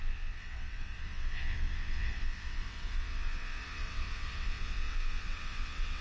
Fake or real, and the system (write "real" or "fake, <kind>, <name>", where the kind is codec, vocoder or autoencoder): fake, vocoder, WaveNeXt